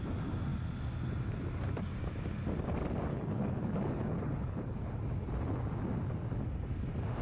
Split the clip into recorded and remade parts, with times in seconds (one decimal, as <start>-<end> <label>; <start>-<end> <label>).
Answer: 0.0-3.1 recorded; 3.1-4.9 remade; 4.9-7.2 recorded